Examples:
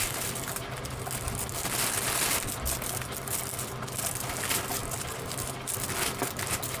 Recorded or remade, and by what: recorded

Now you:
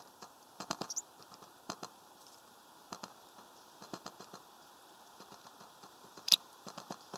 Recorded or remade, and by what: remade, vocoder, BigVGAN v2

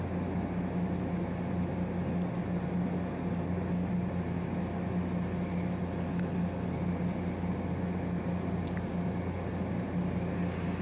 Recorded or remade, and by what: recorded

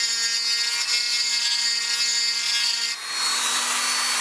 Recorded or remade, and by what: recorded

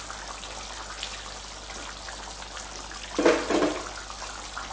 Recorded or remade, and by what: recorded